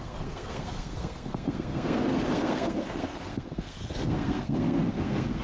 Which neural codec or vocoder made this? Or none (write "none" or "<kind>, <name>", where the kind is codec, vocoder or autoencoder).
codec, SNAC